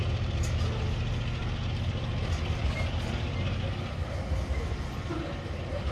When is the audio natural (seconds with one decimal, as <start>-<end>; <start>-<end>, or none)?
0.0-5.9